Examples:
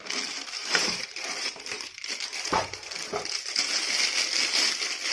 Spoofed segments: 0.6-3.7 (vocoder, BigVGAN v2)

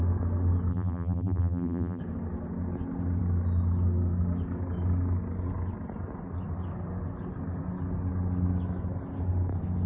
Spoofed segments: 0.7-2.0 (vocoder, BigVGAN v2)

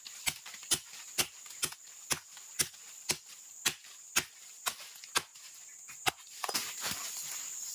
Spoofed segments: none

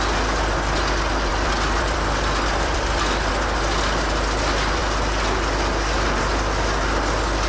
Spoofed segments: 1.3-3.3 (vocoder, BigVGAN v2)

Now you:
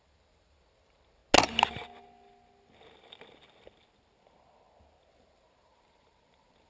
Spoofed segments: 0.0-1.2 (vocoder, BigVGAN v2); 5.1-6.7

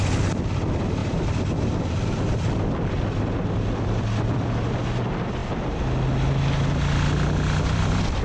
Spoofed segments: 1.0-4.8 (vocoder, BigVGAN v2)

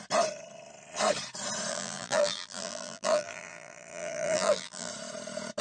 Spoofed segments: 1.7-4.9 (vocoder, BigVGAN v2)

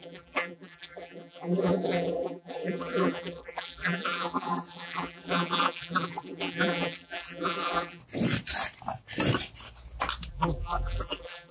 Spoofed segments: 0.0-8.0 (vocoder, BigVGAN v2); 10.3-11.5